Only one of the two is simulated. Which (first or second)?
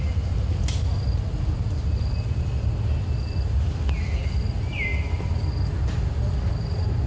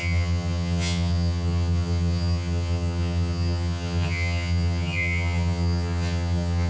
second